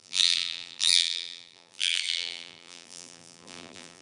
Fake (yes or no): yes